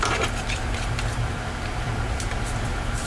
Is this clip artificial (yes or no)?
yes